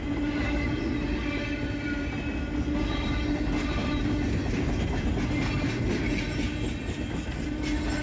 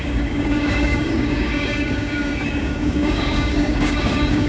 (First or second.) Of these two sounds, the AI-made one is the second